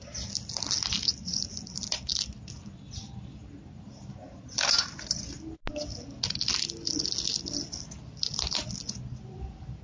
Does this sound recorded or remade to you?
recorded